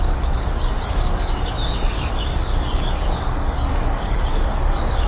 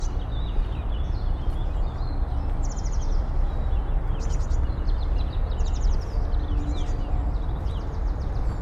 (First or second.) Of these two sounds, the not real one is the first